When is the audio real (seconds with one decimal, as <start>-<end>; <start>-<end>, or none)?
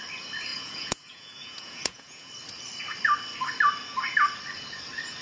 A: 0.0-0.5; 2.3-5.2